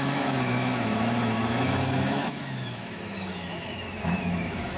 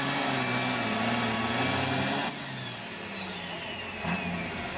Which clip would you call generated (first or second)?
first